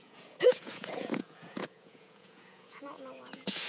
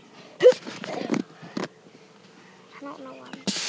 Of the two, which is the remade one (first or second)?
first